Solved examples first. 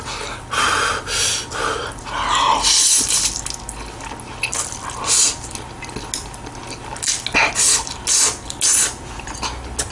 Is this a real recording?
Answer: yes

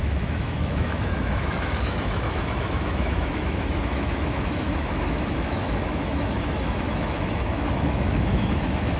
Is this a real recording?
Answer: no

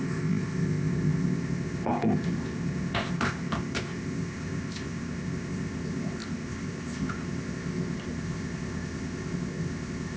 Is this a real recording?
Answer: no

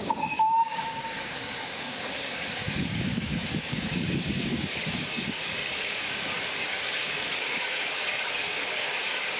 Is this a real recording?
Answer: no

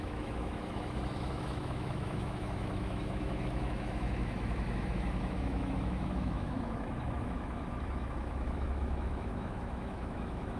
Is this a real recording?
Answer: no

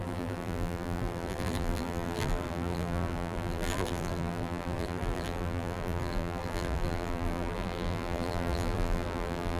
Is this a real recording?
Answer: no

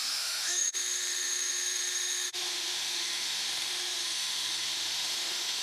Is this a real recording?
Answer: no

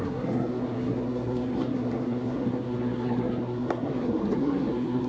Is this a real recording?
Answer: no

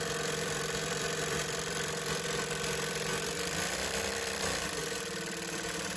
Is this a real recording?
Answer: no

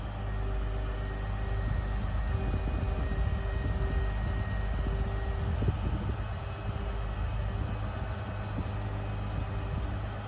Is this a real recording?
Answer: yes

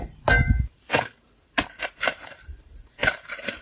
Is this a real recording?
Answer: no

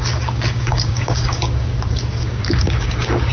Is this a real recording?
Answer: no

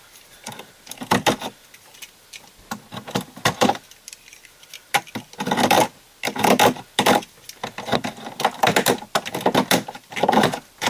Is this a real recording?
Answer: yes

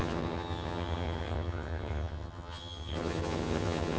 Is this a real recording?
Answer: no